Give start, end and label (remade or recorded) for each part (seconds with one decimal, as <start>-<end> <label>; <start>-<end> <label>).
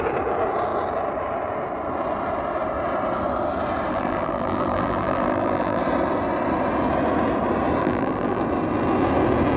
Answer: 0.0-3.9 recorded; 3.9-5.8 remade; 5.8-7.8 recorded; 7.8-8.4 remade; 8.4-9.6 recorded